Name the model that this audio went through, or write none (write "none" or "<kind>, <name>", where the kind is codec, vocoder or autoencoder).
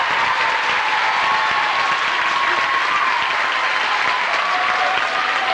none